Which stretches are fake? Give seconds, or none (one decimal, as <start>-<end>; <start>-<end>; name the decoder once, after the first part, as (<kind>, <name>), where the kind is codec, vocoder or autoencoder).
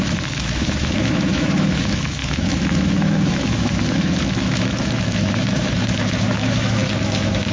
0.0-7.5 (autoencoder, DAC-VAE)